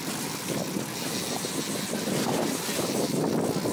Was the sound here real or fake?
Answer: real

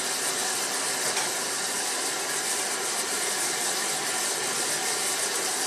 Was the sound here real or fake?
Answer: real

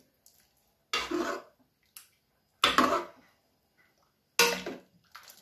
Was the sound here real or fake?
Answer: real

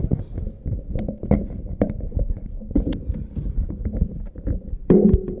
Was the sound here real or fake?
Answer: fake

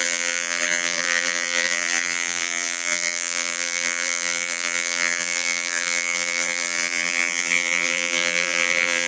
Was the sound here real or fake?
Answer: fake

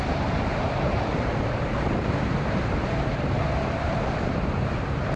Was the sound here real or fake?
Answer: fake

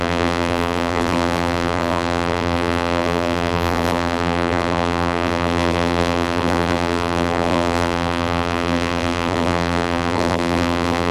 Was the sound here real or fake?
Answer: fake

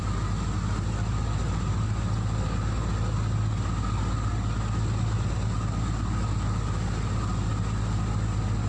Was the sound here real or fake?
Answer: real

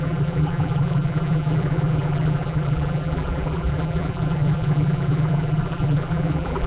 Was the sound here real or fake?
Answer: fake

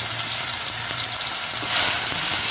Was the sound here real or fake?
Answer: fake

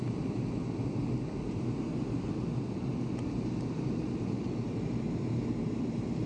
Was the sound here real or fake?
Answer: real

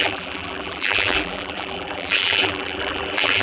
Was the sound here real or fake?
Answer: fake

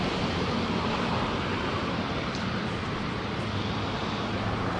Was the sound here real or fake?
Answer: fake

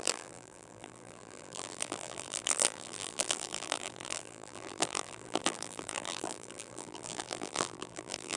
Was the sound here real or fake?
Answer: fake